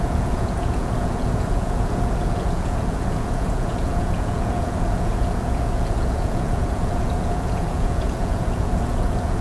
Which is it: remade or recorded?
remade